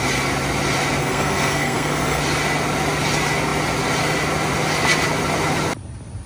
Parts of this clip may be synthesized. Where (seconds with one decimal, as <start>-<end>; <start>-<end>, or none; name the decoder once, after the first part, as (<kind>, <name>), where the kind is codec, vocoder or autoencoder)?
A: 1.0-2.2 (codec, SNAC)